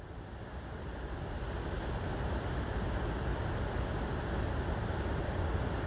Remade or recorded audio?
recorded